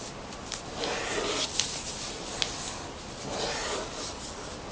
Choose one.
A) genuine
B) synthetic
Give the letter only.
A